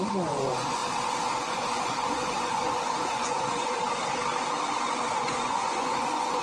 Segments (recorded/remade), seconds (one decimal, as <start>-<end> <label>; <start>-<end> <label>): 0.0-0.8 remade; 0.8-1.4 recorded; 1.4-3.8 remade; 3.8-5.0 recorded; 5.0-6.4 remade